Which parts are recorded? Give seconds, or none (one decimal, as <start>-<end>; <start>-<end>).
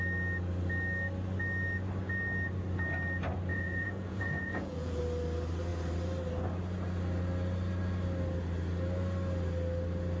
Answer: 0.0-3.5; 5.0-10.2